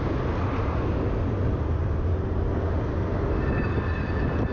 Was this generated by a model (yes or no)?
no